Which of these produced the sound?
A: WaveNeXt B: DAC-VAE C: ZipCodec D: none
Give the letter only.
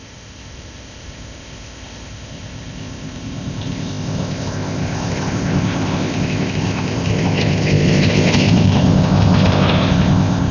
C